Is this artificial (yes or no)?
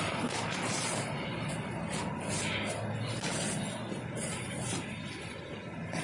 no